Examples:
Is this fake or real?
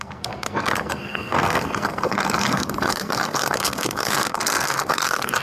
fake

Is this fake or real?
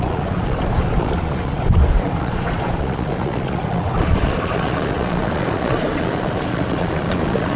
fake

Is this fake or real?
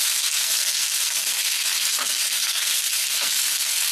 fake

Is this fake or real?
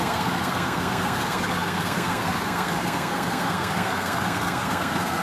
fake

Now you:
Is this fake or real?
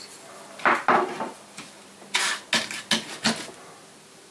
real